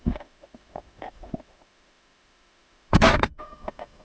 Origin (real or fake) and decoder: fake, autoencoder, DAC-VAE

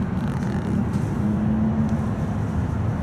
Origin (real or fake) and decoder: real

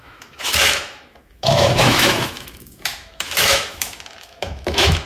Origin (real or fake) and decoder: fake, autoencoder, DAC-VAE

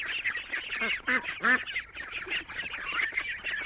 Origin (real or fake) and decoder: real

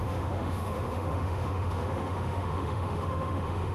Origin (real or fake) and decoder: fake, autoencoder, DAC-VAE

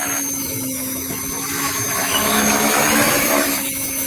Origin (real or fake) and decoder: fake, autoencoder, DAC-VAE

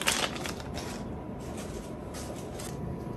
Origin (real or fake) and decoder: real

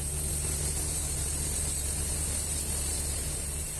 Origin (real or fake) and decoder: real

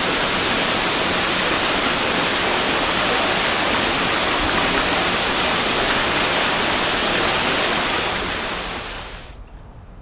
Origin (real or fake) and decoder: real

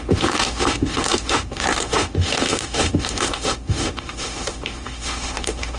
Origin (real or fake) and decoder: fake, autoencoder, DAC-VAE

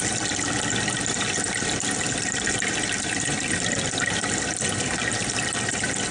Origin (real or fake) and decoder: real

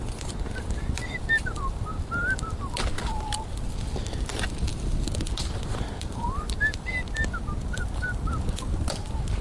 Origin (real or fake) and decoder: real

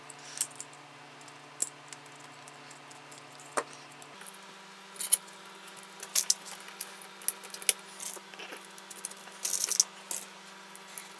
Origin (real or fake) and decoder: real